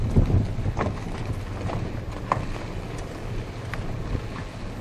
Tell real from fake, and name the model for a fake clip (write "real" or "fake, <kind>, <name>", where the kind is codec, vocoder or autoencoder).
real